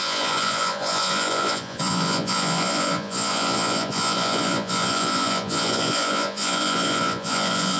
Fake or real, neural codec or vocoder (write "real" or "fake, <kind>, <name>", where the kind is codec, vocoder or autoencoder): fake, vocoder, Vocos